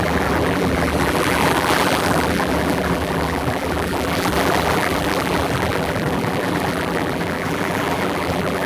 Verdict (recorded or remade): remade